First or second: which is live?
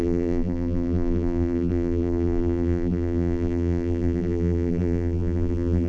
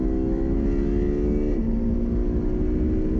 second